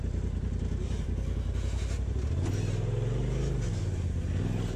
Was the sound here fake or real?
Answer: real